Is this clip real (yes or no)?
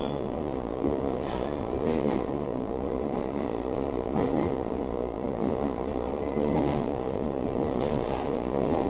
no